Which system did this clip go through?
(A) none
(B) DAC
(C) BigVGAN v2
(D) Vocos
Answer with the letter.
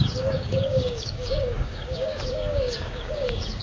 B